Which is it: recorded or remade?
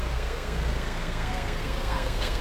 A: remade